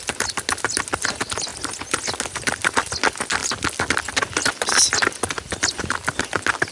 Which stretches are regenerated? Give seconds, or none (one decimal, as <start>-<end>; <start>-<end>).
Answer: none